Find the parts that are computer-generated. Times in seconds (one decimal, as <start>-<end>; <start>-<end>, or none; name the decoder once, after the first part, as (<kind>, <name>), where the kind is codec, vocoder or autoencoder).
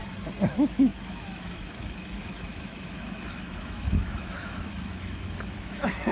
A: 0.5-6.1 (autoencoder, DAC-VAE)